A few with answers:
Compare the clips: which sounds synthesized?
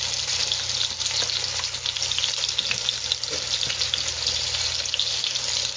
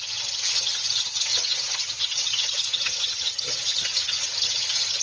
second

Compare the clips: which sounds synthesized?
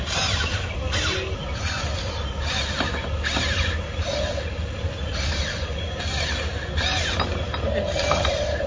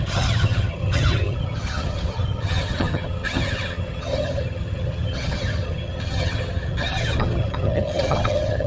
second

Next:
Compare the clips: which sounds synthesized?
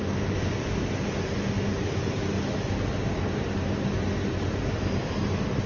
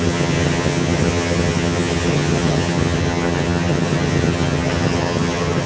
second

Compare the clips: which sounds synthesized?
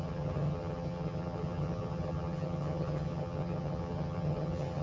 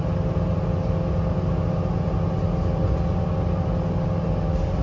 first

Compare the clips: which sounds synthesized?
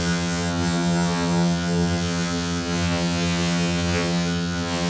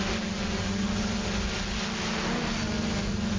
first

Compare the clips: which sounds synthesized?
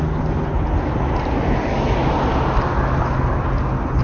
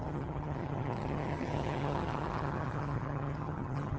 second